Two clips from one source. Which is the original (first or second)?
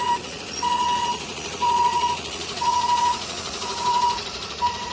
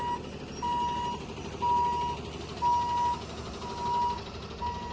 second